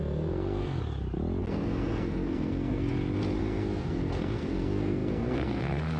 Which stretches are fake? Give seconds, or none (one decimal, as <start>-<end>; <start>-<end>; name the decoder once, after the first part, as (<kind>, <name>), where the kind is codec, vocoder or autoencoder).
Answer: 0.0-0.8 (codec, SNAC); 1.4-2.9; 3.4-6.0